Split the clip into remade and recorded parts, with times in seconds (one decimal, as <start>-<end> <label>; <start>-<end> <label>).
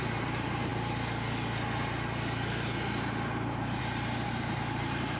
0.0-0.7 remade; 0.7-3.8 recorded; 3.8-5.2 remade